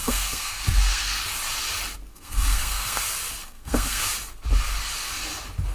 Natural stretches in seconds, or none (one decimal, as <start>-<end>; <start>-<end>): 1.2-2.1; 3.0-3.4; 4.0-5.7